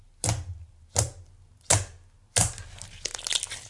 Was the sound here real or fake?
real